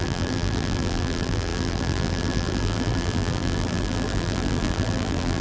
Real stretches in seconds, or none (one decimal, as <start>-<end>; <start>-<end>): none